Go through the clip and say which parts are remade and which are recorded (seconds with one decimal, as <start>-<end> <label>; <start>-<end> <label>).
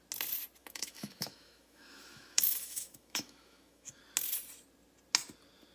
0.0-0.6 recorded; 0.6-4.0 remade; 4.0-5.7 recorded